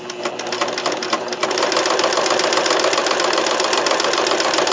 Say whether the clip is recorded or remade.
recorded